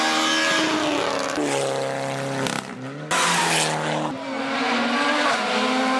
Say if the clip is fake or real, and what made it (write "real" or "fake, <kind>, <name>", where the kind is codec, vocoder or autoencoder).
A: real